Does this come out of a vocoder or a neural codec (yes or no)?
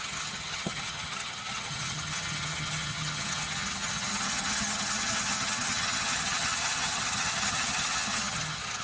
yes